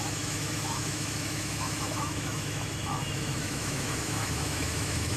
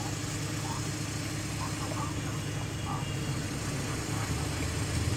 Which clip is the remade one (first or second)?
first